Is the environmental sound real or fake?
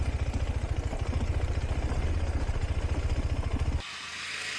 real